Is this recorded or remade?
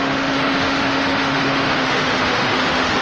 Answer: remade